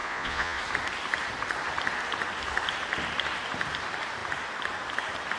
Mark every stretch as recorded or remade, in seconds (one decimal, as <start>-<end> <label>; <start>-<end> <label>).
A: 0.0-0.6 remade; 0.6-5.4 recorded